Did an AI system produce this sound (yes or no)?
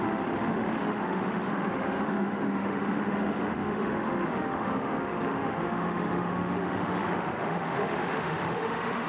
yes